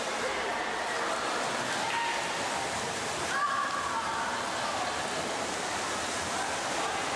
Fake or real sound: real